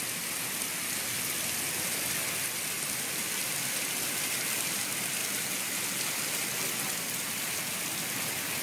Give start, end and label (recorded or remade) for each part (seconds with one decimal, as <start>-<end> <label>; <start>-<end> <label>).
0.0-8.6 recorded